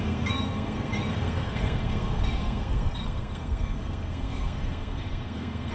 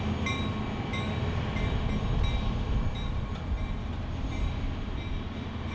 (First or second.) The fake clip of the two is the first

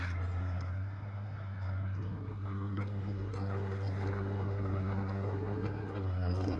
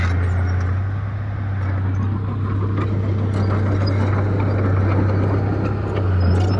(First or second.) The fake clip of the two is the first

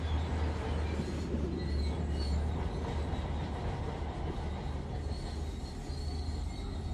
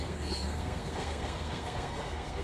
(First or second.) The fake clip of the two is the second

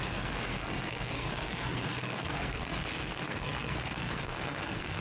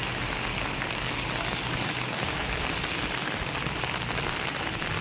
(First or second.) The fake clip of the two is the first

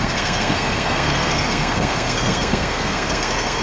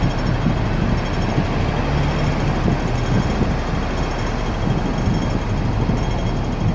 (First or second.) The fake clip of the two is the first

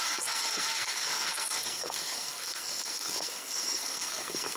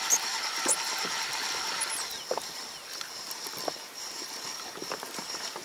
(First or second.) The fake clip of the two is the first